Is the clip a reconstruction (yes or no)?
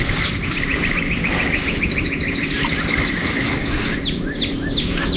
no